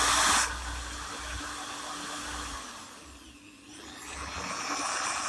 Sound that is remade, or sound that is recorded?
recorded